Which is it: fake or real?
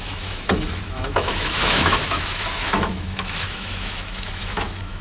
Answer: fake